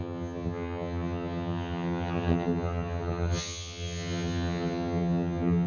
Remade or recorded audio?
remade